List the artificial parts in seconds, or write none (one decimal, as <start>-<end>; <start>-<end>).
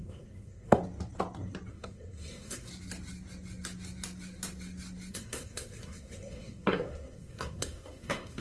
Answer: 0.0-0.8; 1.7-2.7; 5.1-8.4